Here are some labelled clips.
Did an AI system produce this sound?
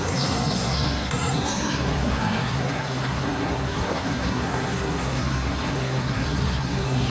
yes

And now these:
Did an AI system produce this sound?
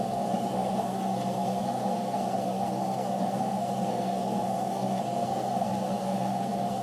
yes